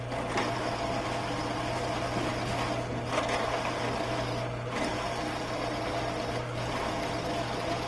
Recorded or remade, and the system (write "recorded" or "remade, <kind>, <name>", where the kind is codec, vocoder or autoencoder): recorded